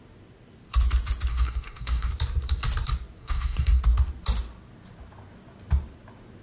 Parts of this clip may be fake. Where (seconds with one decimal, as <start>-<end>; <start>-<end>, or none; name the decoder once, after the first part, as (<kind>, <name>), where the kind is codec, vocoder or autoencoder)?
1.3-2.1 (codec, SNAC); 3.2-3.8